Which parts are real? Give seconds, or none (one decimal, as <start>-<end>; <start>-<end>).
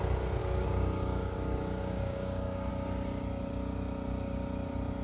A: 0.0-0.4; 2.7-5.0